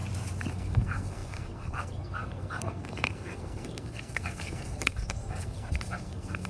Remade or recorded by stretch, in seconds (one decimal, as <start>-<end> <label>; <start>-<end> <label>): 0.0-0.5 recorded; 0.5-6.5 remade